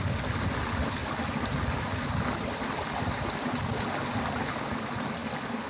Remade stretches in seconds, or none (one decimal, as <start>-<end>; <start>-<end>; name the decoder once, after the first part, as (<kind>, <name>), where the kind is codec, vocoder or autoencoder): none

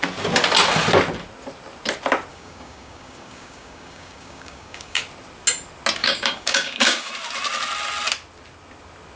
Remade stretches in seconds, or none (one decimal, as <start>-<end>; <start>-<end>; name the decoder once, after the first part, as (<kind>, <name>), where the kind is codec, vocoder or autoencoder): 2.3-5.0 (codec, DAC); 6.0-7.1

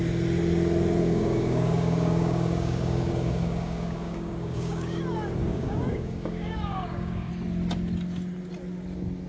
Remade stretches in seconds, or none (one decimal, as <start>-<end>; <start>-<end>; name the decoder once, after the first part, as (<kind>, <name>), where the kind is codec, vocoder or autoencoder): 1.0-5.0 (codec, DAC); 5.4-7.3

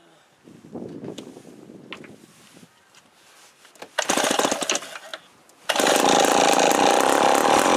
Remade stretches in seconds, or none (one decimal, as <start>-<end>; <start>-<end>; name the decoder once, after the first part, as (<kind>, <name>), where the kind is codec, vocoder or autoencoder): none

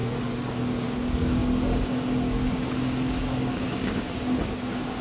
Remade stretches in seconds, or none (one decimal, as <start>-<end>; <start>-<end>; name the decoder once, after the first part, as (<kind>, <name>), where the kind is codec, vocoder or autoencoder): 0.5-5.0 (codec, DAC)

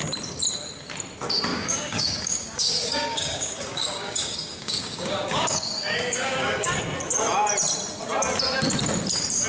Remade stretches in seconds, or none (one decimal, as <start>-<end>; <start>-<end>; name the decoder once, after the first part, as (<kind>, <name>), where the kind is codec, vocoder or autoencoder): 1.5-6.8 (codec, DAC)